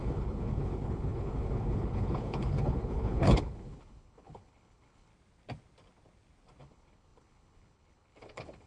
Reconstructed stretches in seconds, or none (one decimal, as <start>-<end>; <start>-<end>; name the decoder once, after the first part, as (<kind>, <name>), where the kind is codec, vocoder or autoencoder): 0.0-5.1 (codec, HILCodec); 6.6-8.7